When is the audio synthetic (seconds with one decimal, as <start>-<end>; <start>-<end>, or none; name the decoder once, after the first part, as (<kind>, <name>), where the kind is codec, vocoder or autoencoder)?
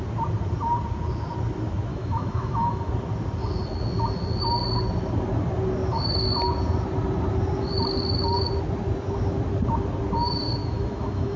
1.9-2.9 (autoencoder, DAC-VAE); 10.6-11.4